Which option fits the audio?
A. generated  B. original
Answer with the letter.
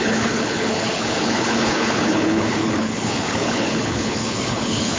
A